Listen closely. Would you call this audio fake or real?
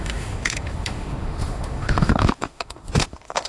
fake